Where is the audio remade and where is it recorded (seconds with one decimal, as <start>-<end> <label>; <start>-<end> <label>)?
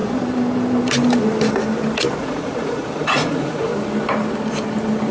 0.0-2.2 recorded; 2.2-3.7 remade; 3.7-5.1 recorded